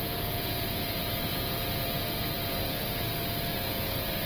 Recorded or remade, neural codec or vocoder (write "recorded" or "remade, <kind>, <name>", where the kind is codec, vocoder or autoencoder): remade, vocoder, Vocos